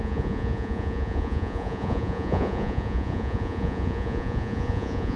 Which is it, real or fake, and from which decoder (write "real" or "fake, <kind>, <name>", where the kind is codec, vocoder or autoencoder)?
fake, vocoder, Vocos